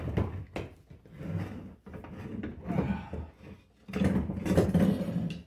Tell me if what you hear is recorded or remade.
recorded